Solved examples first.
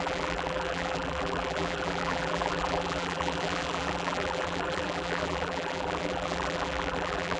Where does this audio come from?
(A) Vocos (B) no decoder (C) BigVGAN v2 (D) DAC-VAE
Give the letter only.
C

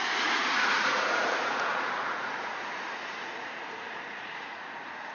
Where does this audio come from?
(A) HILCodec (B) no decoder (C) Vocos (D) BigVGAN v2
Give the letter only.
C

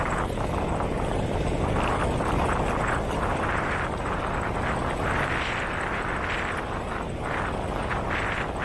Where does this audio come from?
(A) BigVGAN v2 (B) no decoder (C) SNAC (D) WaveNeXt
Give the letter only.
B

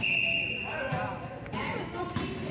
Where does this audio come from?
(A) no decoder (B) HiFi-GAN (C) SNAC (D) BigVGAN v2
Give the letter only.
A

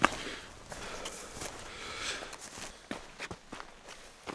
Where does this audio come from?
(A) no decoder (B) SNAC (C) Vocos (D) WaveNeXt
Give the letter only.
A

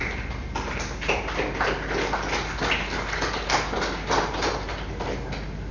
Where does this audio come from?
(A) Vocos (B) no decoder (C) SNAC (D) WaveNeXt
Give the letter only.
B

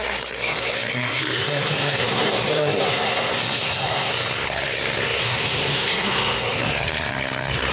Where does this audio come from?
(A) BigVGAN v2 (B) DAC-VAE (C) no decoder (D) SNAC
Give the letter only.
D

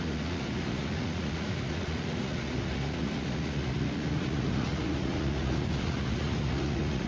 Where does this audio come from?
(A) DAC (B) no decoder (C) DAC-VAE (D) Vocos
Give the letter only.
D